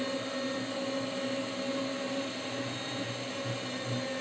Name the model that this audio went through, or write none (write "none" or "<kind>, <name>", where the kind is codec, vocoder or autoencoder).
none